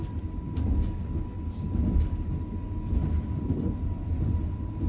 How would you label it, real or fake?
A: real